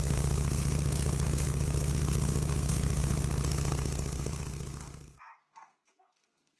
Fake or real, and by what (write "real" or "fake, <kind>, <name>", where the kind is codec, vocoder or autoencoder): fake, codec, SNAC